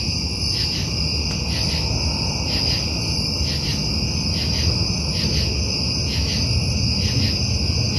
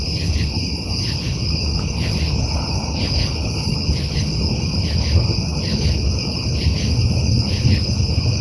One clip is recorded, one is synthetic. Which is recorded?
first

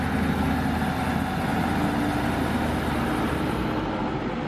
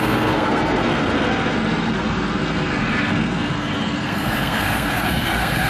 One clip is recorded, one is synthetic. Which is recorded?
first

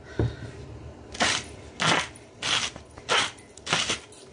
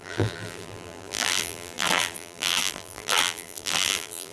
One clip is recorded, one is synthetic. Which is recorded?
first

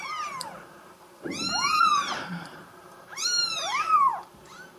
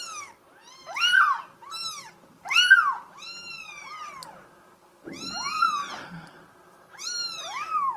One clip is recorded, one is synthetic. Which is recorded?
second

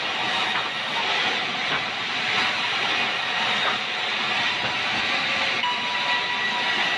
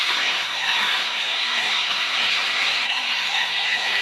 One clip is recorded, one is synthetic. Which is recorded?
first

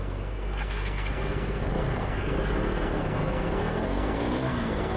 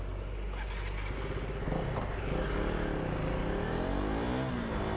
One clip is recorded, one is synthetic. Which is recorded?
second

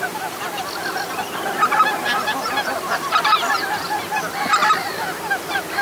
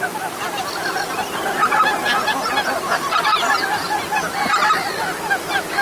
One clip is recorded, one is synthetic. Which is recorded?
second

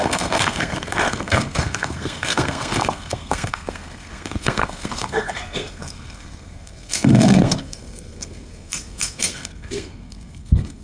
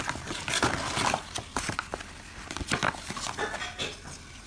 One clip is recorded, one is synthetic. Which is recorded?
second